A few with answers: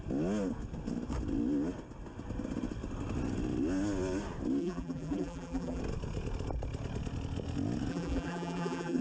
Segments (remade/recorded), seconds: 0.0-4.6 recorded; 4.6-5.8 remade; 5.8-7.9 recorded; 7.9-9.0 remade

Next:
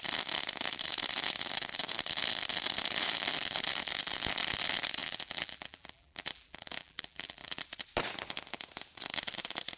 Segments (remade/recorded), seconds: 0.0-5.0 recorded; 5.0-7.6 remade; 7.6-9.8 recorded